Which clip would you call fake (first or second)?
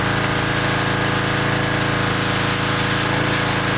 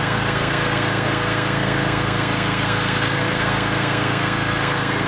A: second